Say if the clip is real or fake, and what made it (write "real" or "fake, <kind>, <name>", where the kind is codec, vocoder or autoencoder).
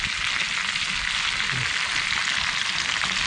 real